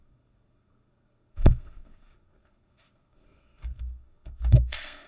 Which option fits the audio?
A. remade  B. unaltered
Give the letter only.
A